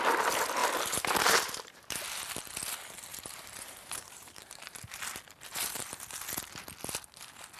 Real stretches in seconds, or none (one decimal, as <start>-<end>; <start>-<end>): 0.0-0.6; 2.0-3.1; 5.0-5.5; 6.2-7.6